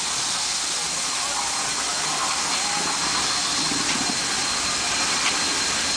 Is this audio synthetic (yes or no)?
no